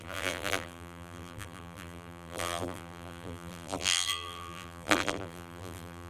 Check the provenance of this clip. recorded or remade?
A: remade